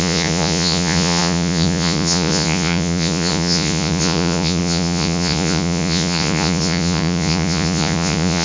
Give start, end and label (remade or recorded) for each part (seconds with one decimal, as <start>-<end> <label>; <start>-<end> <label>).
0.0-8.4 remade